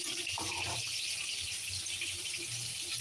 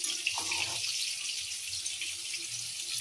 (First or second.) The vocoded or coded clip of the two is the first